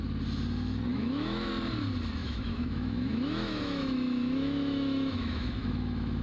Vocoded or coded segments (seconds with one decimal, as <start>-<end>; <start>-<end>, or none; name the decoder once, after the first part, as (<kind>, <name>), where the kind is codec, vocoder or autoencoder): 0.9-1.5 (autoencoder, DAC-VAE); 2.2-6.2